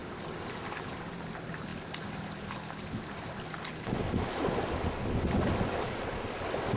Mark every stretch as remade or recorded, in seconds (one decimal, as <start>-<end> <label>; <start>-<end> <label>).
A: 0.0-6.8 recorded

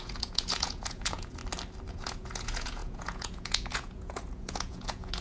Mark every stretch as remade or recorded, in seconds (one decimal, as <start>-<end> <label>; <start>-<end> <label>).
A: 0.0-1.4 remade; 1.4-1.9 recorded; 1.9-5.2 remade

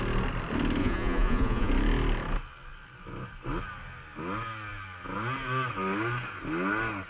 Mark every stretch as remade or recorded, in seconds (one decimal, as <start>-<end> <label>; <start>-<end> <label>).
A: 0.0-0.8 recorded; 0.8-1.7 remade; 1.7-7.1 recorded

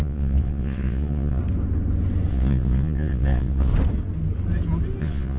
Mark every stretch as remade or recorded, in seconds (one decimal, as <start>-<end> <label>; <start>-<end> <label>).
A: 0.0-1.4 remade; 1.4-2.3 recorded; 2.3-3.7 remade; 3.7-5.0 recorded; 5.0-5.4 remade

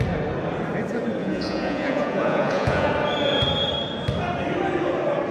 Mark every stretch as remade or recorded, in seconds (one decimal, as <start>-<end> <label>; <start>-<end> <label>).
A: 0.0-1.2 recorded; 1.2-2.9 remade; 2.9-5.3 recorded

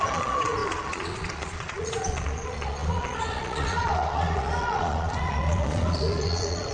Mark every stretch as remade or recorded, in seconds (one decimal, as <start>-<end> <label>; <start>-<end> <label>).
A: 0.0-6.7 remade